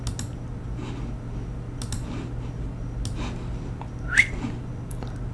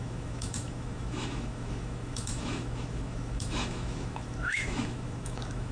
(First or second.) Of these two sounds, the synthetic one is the second